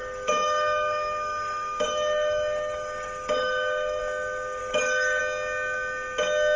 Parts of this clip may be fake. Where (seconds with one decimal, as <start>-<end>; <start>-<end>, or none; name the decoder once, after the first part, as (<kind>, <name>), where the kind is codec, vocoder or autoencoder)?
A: 0.0-4.0 (autoencoder, DAC-VAE); 4.6-5.2